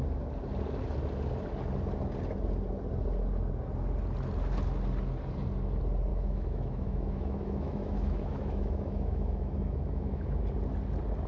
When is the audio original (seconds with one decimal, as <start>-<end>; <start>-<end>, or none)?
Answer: 0.0-6.1; 10.4-11.3